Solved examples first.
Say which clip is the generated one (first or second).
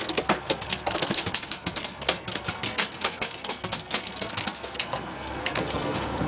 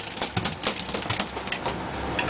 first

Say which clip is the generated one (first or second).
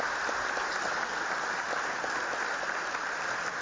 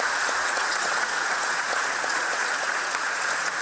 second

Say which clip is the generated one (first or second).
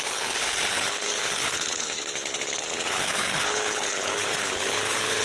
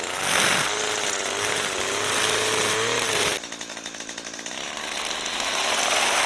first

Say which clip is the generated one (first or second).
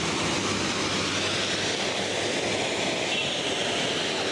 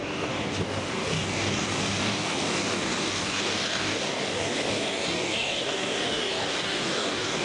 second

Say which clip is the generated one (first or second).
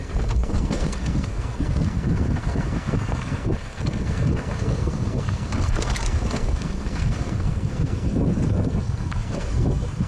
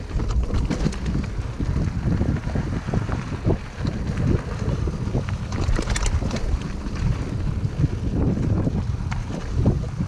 first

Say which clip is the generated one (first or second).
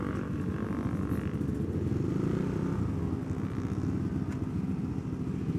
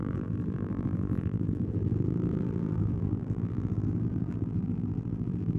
second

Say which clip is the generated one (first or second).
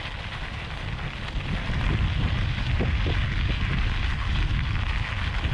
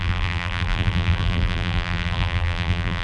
second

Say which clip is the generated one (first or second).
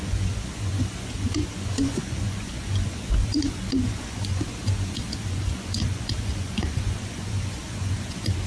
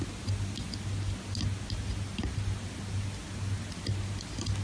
first